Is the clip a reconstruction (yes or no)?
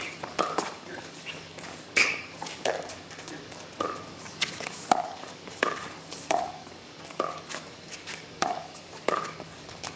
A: yes